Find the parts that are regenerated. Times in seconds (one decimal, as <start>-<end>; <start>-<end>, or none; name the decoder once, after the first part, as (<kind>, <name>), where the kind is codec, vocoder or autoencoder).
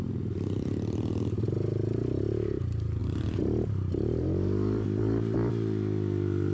3.0-5.5 (vocoder, BigVGAN v2)